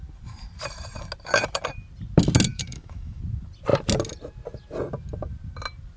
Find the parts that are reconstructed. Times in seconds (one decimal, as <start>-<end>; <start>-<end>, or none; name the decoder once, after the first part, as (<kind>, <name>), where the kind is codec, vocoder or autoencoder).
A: 2.5-3.2 (autoencoder, DAC-VAE)